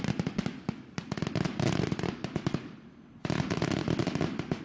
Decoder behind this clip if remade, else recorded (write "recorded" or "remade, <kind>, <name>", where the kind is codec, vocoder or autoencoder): recorded